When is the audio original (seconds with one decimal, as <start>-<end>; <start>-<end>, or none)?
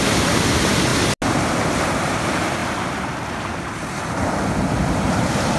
0.9-1.7; 2.6-4.6